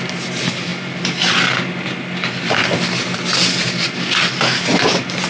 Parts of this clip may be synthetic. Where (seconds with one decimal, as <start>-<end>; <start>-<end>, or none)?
none

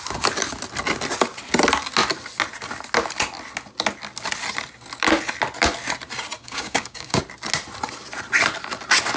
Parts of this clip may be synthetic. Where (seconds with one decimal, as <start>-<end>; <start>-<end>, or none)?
6.4-7.2

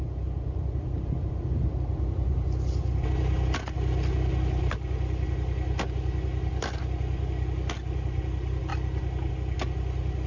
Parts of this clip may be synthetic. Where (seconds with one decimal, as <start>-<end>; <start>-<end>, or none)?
none

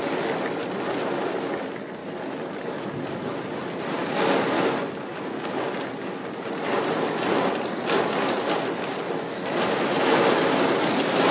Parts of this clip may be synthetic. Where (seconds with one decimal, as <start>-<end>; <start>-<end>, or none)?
none

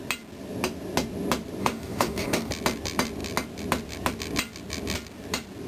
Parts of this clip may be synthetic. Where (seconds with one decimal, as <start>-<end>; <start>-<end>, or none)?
1.6-2.5

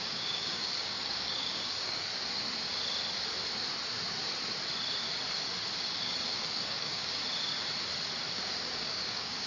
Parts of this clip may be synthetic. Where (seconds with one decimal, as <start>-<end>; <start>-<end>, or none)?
0.0-2.1; 5.8-7.2; 8.3-9.5